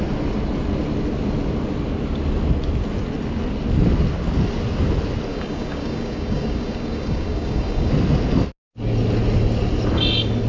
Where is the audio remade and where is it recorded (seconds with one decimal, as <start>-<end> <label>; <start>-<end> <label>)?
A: 0.0-5.3 recorded; 5.3-7.9 remade; 7.9-10.5 recorded